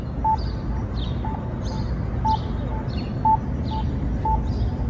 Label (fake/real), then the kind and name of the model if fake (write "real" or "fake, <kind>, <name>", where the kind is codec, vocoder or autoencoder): real